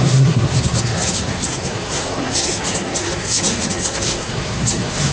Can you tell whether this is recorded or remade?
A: remade